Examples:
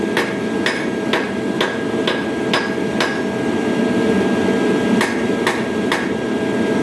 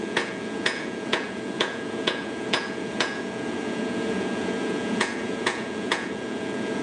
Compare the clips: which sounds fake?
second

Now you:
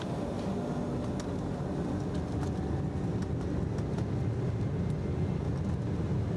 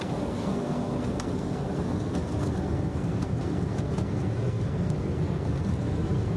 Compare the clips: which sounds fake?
second